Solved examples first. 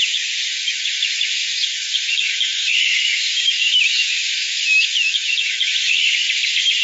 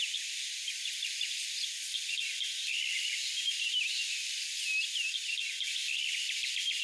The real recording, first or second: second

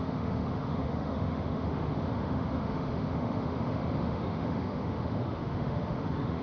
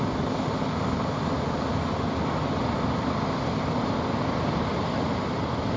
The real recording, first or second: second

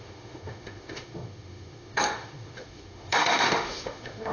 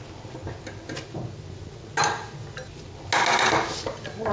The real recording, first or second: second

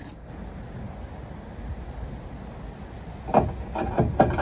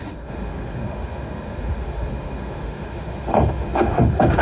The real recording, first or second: first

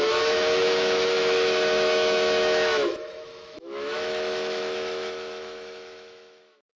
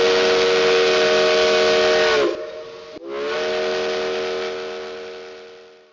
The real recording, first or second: second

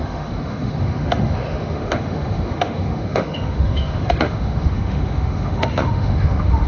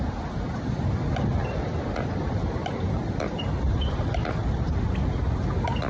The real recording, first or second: second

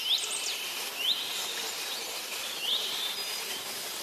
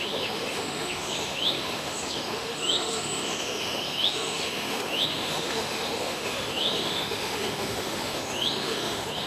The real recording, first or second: first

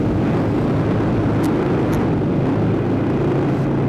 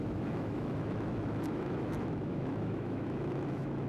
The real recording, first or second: first